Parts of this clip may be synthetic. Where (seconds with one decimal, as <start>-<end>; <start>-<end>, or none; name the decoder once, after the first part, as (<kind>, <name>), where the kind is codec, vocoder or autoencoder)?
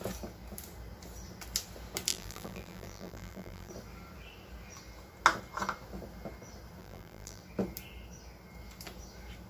2.1-3.7 (vocoder, BigVGAN v2); 6.8-7.4